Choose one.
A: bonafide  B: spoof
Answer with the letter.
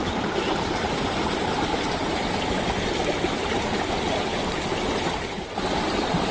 B